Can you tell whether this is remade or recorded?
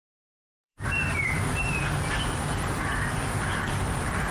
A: remade